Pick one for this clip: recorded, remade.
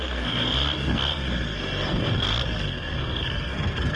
remade